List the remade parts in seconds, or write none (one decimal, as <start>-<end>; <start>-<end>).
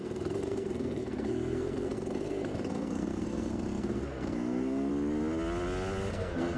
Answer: 0.0-4.9; 6.1-6.6